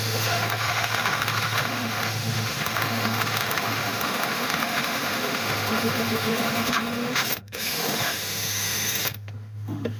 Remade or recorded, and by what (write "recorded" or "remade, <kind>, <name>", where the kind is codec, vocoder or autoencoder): remade, autoencoder, DAC-VAE